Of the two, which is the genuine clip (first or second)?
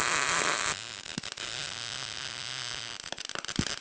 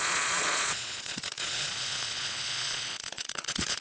first